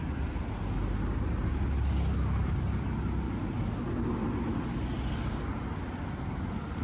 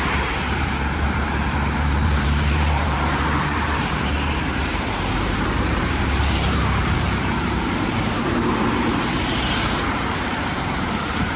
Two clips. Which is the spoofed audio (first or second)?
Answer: second